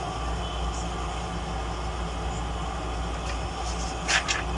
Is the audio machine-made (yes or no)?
no